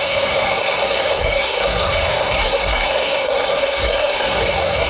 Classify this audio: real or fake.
fake